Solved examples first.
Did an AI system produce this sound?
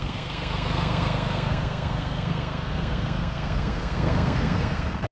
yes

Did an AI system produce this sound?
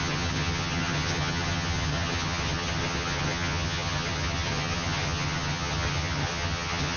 yes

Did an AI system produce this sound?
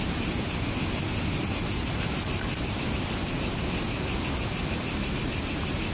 no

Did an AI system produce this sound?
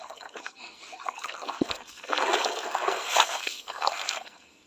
yes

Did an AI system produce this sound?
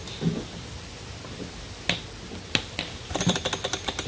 no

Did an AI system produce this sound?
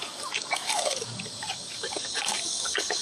yes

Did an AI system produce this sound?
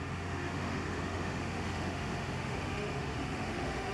yes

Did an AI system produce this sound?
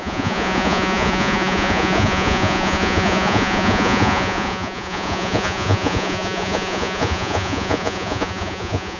yes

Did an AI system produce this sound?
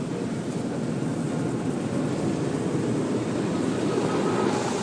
no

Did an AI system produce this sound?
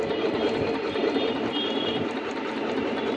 yes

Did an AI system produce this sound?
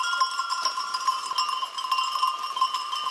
no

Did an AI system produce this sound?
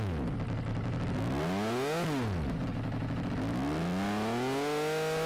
no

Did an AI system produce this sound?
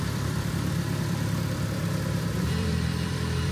yes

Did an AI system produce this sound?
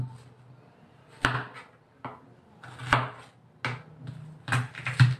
no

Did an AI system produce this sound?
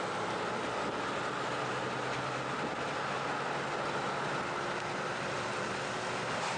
no